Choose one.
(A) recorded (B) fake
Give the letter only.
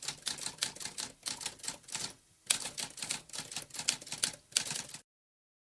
A